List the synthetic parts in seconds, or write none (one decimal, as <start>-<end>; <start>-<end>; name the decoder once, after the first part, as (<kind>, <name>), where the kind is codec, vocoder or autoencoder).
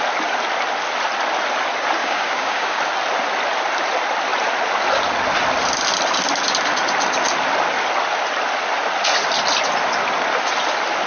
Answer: 2.0-2.8 (codec, DAC)